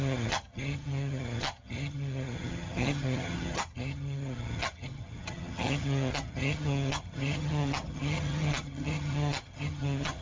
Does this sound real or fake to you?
fake